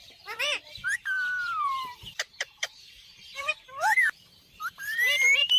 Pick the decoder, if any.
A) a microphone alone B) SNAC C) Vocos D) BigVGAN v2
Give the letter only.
D